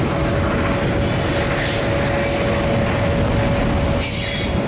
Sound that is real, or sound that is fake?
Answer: real